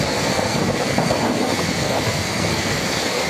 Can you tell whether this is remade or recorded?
remade